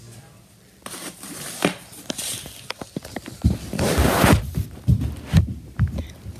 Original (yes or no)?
yes